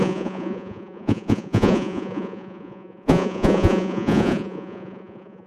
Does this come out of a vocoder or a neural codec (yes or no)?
yes